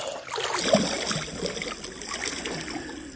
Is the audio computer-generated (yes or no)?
no